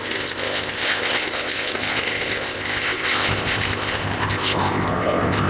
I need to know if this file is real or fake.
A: fake